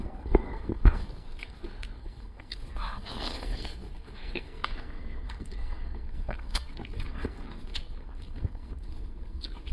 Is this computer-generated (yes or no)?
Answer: yes